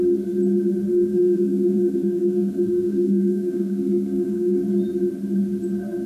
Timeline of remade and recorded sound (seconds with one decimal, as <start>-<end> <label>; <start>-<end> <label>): 0.0-0.9 recorded; 0.9-4.6 remade; 4.6-6.1 recorded